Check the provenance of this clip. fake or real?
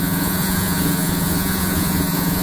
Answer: fake